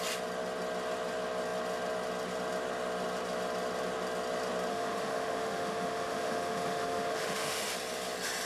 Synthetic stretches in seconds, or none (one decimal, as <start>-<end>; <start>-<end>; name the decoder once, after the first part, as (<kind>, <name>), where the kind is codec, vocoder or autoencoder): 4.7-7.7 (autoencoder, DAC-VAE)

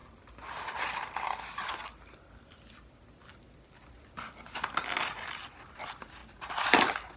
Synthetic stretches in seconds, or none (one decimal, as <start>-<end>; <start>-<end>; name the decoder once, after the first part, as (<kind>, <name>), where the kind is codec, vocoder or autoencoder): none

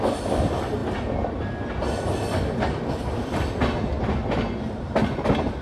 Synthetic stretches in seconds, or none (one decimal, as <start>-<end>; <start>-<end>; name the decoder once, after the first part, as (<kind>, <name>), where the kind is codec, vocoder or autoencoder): none